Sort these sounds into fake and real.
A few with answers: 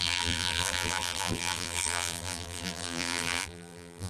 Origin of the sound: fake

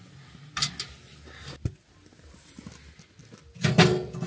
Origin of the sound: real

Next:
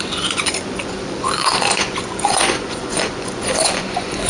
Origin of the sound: fake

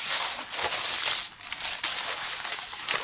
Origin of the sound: real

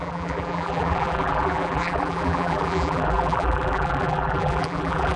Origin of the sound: fake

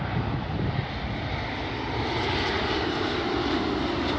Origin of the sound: real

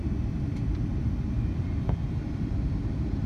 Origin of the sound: fake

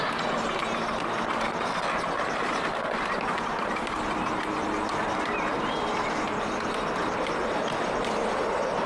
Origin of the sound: real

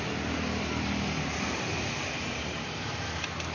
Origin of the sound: real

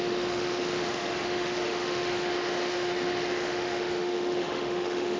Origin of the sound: fake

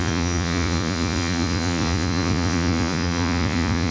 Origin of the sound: fake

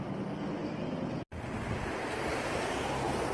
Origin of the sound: real